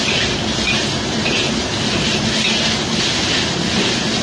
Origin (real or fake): real